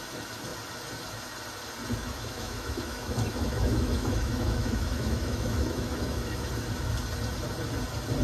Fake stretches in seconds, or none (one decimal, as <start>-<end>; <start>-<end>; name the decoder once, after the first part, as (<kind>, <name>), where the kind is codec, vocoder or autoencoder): 2.0-6.5 (autoencoder, DAC-VAE)